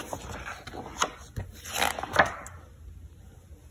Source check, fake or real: real